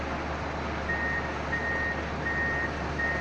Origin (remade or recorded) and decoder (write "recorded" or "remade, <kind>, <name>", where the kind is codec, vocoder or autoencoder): recorded